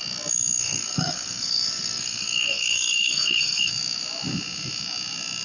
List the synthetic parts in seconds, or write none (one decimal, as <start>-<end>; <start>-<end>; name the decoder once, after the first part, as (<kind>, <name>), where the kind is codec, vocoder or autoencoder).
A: 0.6-3.7 (codec, SNAC)